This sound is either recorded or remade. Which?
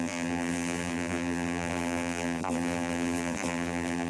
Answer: remade